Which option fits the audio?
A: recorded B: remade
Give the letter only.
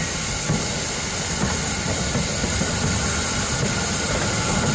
A